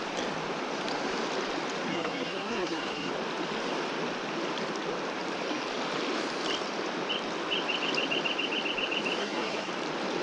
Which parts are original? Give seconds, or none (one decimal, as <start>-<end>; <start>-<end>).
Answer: 0.0-1.9; 3.1-9.2; 9.7-10.2